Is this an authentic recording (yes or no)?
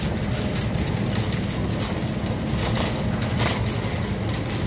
yes